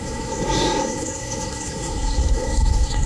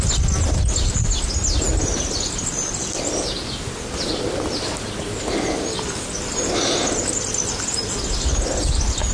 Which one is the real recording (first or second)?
second